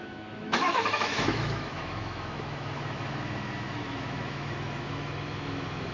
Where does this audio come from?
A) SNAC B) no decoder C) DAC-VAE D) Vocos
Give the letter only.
C